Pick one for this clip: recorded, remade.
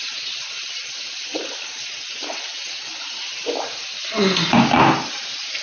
recorded